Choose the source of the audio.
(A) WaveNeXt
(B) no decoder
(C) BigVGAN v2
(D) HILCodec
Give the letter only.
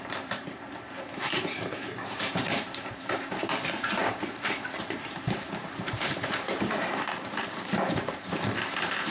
C